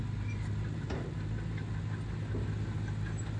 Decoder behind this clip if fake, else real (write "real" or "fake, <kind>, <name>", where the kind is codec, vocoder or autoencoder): real